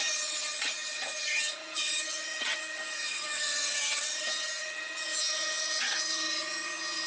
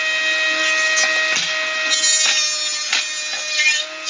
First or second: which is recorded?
second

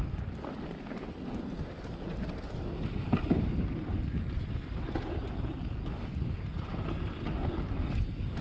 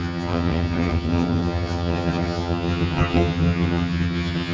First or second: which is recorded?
first